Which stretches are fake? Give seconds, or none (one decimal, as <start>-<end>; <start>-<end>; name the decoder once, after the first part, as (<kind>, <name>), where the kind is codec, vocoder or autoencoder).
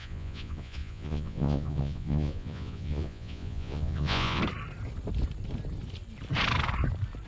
0.0-4.4 (vocoder, Vocos)